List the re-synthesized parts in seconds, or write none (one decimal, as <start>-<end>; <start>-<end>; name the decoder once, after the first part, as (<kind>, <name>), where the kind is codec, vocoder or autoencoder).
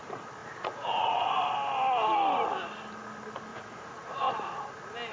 0.4-1.3 (vocoder, Vocos); 3.5-4.6